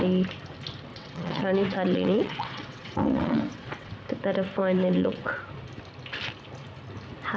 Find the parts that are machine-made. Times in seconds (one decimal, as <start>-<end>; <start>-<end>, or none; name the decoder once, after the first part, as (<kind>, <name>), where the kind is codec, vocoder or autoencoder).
0.9-3.9 (vocoder, WaveNeXt); 4.6-5.4